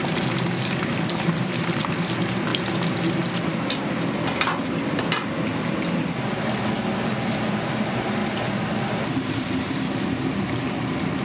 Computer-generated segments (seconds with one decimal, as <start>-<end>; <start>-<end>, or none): 0.0-2.5; 7.3-11.2